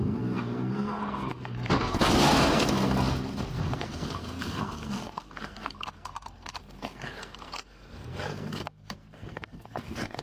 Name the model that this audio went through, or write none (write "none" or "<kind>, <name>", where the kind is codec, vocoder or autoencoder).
codec, SNAC